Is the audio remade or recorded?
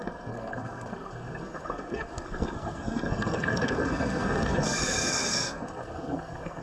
remade